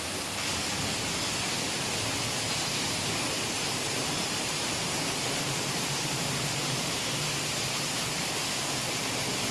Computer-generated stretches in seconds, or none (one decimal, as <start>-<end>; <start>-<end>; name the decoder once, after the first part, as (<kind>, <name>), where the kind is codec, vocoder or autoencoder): 4.0-8.2 (vocoder, BigVGAN v2)